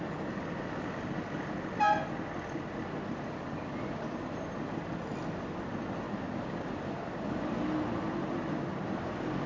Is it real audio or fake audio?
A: real